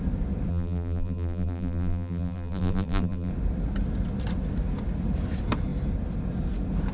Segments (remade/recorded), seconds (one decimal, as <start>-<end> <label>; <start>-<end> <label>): 0.0-0.5 recorded; 0.5-3.3 remade; 3.3-6.9 recorded